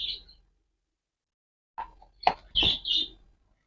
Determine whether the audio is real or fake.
real